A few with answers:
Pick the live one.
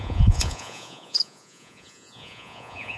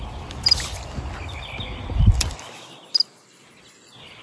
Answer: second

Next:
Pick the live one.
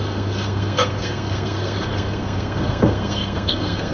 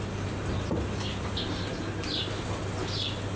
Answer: second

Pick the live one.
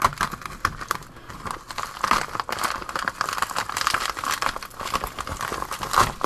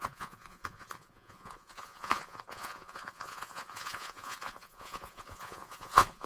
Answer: first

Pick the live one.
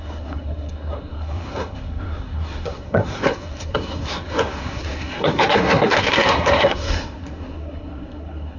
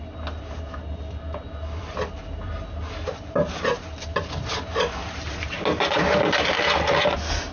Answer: second